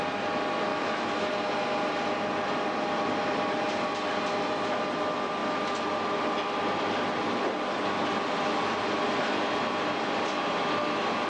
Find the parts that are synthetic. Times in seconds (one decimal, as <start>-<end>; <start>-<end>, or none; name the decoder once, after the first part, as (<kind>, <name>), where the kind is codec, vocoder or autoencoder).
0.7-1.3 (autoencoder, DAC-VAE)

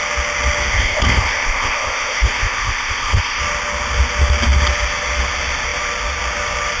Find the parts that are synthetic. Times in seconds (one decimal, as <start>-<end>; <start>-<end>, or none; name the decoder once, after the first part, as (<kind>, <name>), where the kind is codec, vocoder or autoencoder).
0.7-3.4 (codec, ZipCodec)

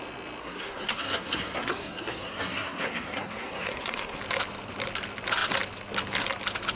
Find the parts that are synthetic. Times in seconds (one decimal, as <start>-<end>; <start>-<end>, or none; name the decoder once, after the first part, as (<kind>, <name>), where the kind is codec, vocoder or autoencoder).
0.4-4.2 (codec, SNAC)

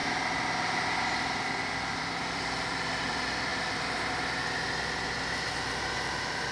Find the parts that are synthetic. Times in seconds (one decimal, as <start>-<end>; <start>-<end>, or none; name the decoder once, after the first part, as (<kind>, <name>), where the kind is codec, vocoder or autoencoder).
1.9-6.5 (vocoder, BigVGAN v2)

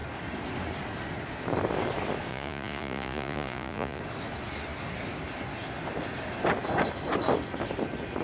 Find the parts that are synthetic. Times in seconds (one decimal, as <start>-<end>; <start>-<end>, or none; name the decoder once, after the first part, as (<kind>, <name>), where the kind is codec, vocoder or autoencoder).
2.3-4.0 (vocoder, Vocos)

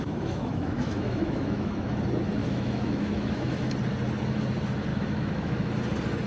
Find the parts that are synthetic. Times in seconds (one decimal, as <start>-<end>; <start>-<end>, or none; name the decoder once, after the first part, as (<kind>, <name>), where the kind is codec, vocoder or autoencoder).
0.0-2.0 (autoencoder, DAC-VAE); 2.4-3.7; 4.9-5.7

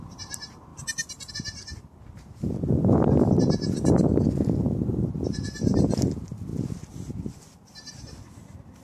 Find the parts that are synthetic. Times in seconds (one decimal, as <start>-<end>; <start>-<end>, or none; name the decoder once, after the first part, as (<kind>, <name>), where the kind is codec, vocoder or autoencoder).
none

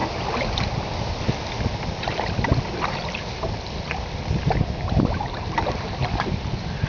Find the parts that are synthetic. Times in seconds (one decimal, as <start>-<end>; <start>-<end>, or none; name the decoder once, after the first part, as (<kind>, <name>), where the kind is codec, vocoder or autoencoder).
none